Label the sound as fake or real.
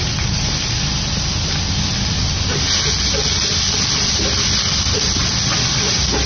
real